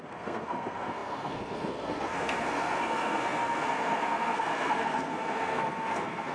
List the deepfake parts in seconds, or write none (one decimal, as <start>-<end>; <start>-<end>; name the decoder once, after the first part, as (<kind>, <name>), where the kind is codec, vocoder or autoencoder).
0.0-6.3 (codec, SNAC)

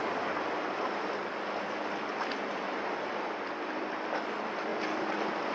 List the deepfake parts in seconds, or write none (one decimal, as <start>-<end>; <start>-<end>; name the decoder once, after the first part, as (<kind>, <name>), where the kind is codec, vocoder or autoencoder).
none

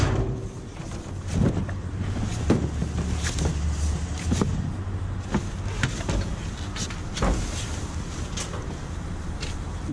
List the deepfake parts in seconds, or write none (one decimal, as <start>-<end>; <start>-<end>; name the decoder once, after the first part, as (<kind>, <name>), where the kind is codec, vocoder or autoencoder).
none